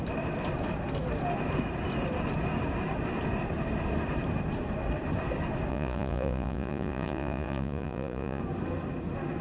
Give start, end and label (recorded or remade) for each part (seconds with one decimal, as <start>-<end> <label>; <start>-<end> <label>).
0.0-5.7 recorded; 5.7-8.4 remade; 8.4-9.4 recorded